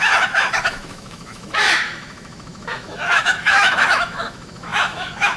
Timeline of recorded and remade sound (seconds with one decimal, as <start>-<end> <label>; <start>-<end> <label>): 0.0-5.4 remade

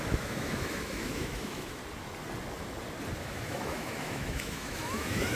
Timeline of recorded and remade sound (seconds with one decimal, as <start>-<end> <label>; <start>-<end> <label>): 0.0-1.8 remade; 1.8-3.2 recorded; 3.2-5.4 remade

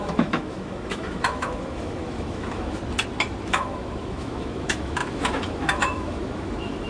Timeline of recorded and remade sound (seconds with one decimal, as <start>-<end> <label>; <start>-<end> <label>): 0.0-2.8 remade; 2.8-3.5 recorded; 3.5-6.9 remade

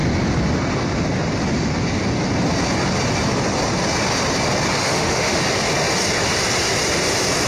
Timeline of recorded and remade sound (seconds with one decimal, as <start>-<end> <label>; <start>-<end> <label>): 0.0-4.8 recorded; 4.8-5.4 remade; 5.4-7.5 recorded

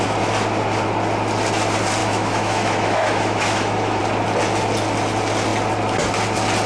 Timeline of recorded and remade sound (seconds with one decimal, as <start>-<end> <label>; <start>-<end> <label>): 0.0-2.0 recorded; 2.0-4.0 remade; 4.0-6.7 recorded

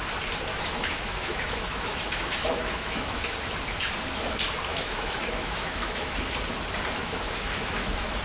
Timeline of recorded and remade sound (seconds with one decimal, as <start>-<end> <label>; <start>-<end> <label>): 0.0-0.5 recorded; 0.5-3.2 remade; 3.2-4.7 recorded; 4.7-6.3 remade; 6.3-7.0 recorded; 7.0-8.2 remade

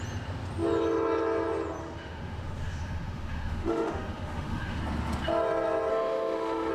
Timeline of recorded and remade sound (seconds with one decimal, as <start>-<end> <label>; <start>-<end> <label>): 0.0-1.8 recorded; 1.8-4.8 remade; 4.8-5.9 recorded; 5.9-6.7 remade